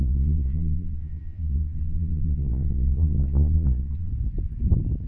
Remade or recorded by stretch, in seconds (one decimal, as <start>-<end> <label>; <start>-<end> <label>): 0.0-4.1 remade; 4.1-5.1 recorded